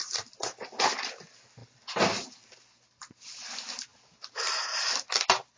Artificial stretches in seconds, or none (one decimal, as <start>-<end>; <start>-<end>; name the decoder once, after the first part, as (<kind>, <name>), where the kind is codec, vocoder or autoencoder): none